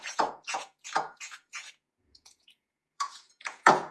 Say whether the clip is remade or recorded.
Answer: remade